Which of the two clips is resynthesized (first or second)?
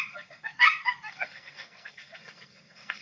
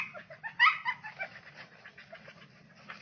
first